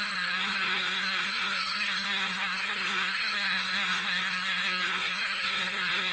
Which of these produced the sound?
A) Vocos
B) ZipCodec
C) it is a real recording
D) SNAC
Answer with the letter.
D